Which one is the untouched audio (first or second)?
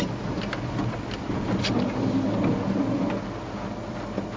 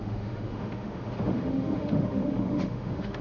first